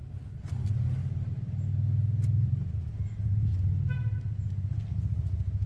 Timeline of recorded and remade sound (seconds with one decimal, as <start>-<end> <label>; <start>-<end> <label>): 0.0-5.7 recorded